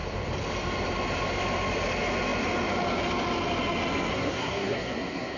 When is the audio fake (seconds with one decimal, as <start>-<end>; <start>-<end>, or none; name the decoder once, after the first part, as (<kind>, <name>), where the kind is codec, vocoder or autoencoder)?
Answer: 4.1-5.4 (codec, SNAC)